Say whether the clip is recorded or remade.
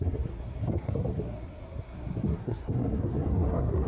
remade